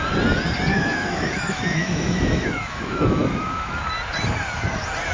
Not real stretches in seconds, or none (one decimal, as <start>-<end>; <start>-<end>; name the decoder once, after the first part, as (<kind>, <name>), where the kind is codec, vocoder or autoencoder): 0.7-3.8 (autoencoder, DAC-VAE)